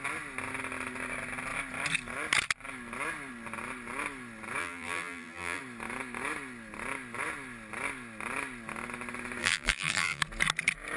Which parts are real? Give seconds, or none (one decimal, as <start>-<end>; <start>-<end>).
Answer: 0.0-4.6; 5.6-9.4; 10.2-11.0